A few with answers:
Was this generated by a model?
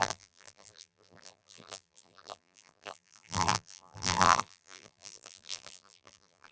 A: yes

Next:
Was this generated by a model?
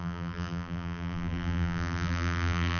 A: yes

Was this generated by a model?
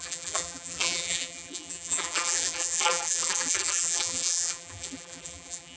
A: yes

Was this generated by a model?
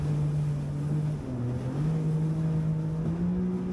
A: no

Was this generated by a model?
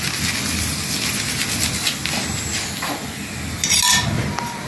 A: no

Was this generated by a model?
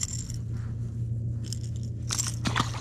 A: no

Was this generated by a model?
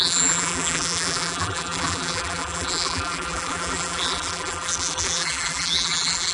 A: yes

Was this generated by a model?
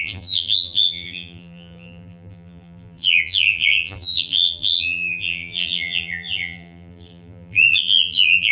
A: yes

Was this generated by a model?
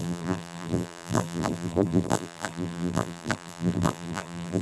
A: yes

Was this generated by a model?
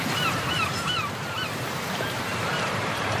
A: yes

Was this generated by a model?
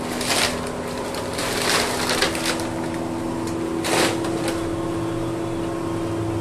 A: no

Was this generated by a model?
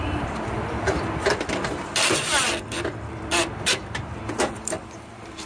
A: yes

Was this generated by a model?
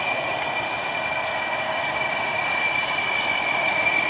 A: no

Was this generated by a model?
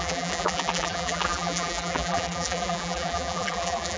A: yes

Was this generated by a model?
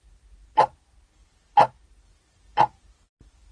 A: no